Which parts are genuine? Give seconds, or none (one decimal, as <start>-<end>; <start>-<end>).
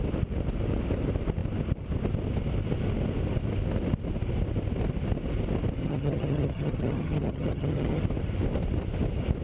0.0-5.8; 8.0-9.4